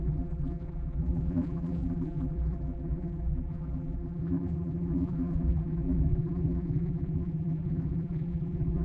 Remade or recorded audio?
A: remade